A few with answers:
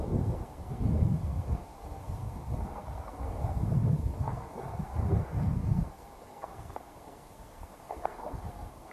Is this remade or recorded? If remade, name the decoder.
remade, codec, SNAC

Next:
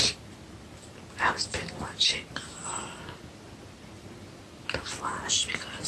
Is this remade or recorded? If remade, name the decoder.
recorded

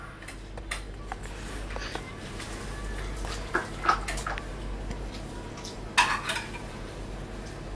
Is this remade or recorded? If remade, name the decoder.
recorded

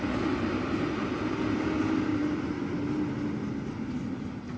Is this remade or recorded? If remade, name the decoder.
recorded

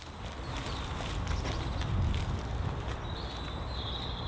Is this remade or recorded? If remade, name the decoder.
recorded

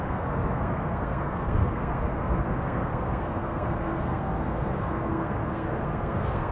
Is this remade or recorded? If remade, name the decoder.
remade, codec, SNAC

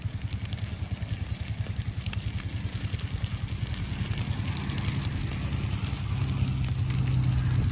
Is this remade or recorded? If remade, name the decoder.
recorded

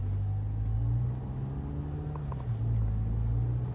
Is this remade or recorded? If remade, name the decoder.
recorded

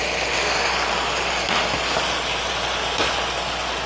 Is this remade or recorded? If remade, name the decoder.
recorded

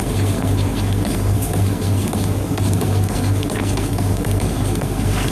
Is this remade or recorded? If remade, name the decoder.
remade, codec, SNAC